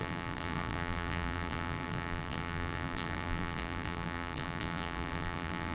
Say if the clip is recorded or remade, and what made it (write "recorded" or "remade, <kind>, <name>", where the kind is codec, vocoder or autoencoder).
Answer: remade, vocoder, BigVGAN v2